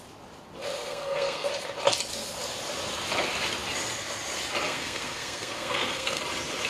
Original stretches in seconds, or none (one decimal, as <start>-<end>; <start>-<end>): 0.0-0.8; 1.5-4.7; 6.2-6.7